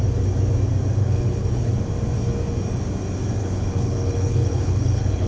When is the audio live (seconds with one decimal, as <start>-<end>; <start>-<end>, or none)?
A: 0.0-1.0; 1.7-3.4